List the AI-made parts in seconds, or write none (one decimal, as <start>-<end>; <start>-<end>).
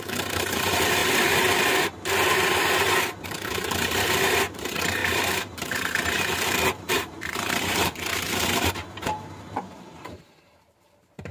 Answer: 0.0-11.3